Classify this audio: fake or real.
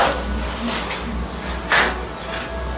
real